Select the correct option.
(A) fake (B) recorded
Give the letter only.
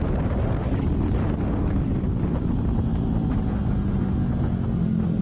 B